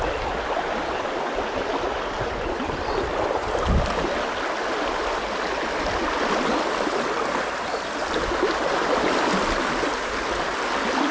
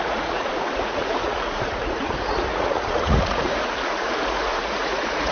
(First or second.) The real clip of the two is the first